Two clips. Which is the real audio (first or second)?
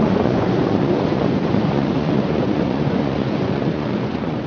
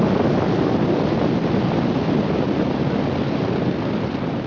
second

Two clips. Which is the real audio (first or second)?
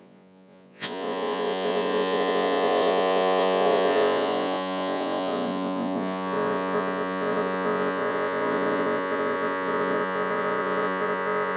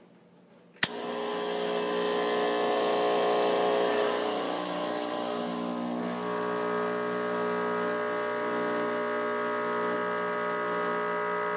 second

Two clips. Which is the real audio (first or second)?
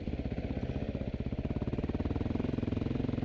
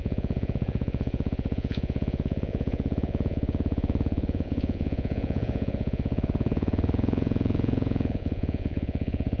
first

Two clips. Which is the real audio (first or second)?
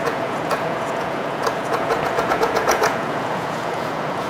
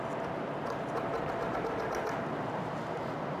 second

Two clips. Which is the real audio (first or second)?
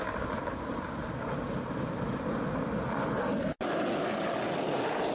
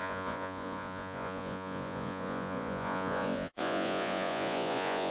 first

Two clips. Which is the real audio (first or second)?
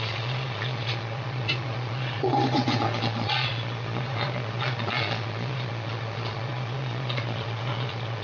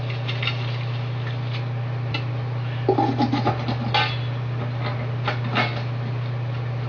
second